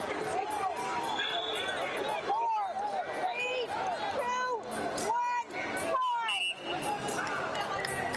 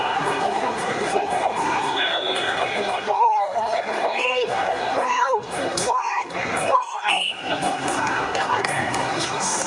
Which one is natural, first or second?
first